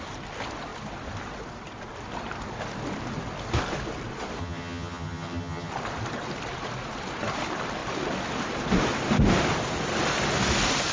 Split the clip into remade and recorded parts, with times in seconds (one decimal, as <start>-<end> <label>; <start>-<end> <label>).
0.0-4.4 recorded; 4.4-5.7 remade; 5.7-10.9 recorded